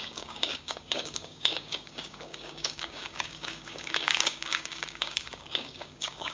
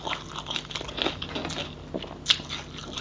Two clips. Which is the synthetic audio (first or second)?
first